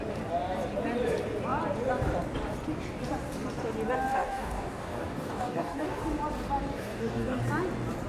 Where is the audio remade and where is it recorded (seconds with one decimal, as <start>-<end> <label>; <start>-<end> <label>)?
0.0-4.1 recorded; 4.1-6.0 remade; 6.0-6.7 recorded; 6.7-7.4 remade; 7.4-8.1 recorded